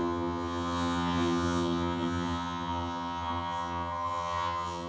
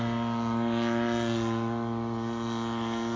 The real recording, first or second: second